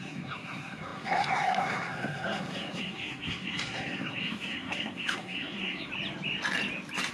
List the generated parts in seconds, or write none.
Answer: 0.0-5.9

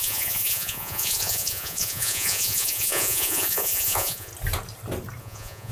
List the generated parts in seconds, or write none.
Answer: 0.0-4.3; 5.2-5.7

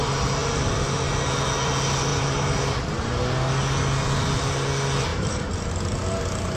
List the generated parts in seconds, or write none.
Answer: 2.1-3.2; 5.1-5.7

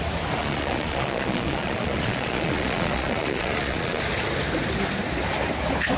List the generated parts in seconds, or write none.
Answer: 0.4-4.0

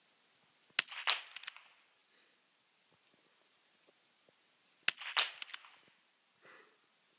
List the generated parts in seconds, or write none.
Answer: none

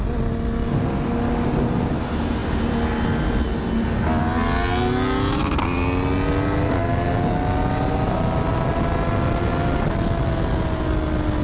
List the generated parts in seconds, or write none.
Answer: none

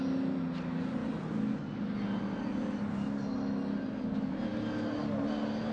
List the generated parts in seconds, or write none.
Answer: none

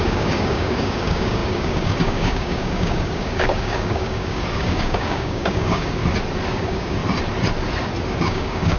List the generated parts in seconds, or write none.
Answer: 0.0-6.0; 6.5-7.0; 8.2-8.8